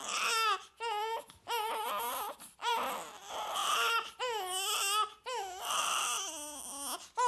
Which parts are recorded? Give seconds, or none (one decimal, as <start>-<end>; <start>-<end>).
0.0-2.1; 2.9-3.6; 4.2-7.3